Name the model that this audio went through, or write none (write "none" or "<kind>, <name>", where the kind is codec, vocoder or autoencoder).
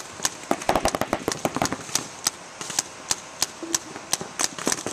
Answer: none